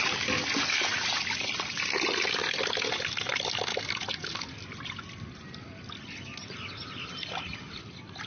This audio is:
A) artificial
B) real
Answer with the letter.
B